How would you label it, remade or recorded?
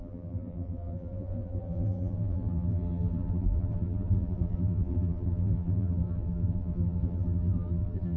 remade